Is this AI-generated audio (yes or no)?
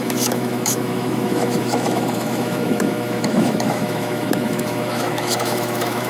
yes